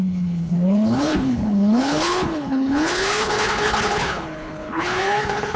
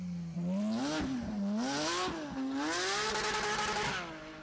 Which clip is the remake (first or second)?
first